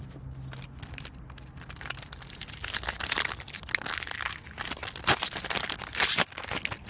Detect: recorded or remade recorded